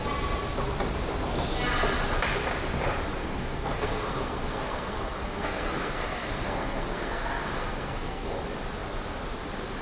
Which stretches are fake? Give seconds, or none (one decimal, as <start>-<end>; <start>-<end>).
3.2-8.4

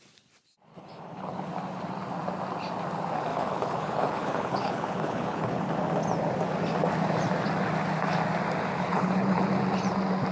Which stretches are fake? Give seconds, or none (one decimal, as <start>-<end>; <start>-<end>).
0.7-1.5; 3.3-5.6; 8.7-9.4